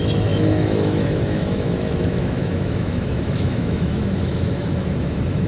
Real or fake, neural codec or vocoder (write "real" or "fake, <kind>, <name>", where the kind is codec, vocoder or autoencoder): fake, autoencoder, DAC-VAE